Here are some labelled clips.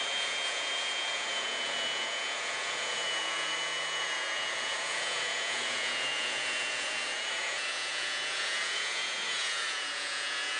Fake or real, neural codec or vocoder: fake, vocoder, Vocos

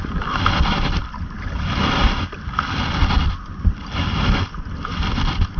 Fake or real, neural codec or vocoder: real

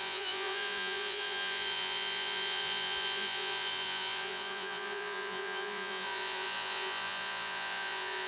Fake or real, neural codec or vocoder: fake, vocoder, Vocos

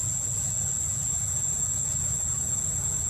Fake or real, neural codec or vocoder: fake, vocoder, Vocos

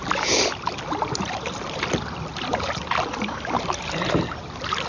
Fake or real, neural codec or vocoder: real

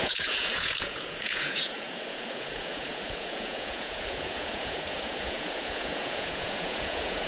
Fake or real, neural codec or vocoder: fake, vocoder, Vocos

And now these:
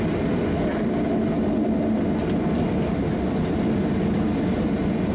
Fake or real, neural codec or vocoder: real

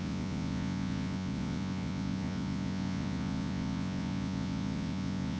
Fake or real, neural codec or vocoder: fake, vocoder, Vocos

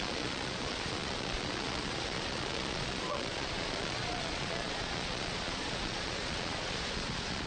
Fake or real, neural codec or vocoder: fake, vocoder, Vocos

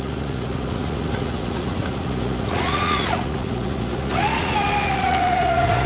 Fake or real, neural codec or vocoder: fake, vocoder, Vocos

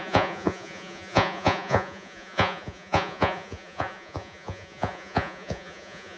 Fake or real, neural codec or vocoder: fake, vocoder, Vocos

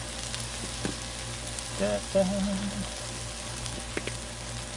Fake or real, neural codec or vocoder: real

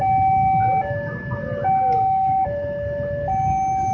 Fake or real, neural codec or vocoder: real